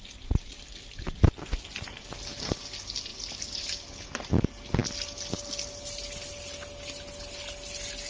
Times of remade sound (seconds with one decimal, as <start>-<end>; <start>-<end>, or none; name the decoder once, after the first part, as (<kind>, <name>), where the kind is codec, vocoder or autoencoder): none